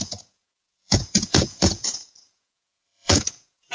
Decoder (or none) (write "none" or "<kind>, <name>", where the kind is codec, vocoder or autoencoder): vocoder, Vocos